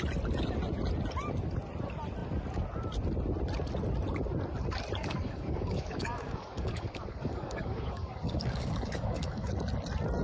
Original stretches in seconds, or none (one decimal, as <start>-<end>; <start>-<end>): 0.0-5.0; 9.5-10.2